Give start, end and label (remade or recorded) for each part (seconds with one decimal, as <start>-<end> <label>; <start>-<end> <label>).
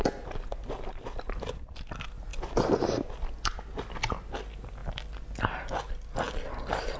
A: 0.0-7.0 recorded